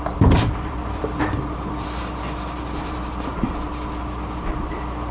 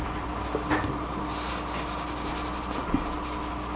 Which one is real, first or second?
second